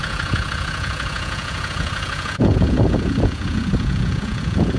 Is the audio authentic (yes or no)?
no